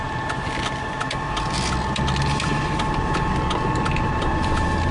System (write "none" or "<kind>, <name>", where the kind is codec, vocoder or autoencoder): none